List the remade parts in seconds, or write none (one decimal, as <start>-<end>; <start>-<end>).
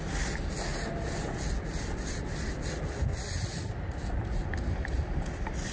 0.7-1.4